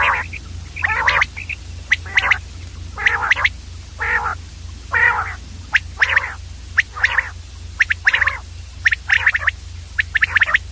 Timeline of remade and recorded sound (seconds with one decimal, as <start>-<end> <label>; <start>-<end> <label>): 0.0-10.7 recorded